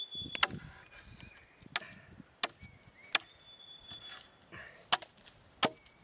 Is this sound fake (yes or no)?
no